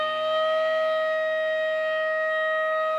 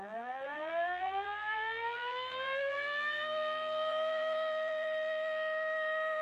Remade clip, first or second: second